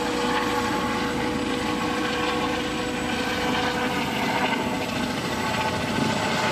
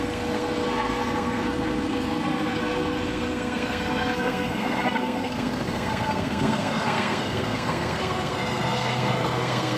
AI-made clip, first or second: second